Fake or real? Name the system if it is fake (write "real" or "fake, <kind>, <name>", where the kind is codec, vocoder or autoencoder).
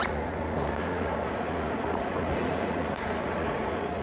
fake, vocoder, Vocos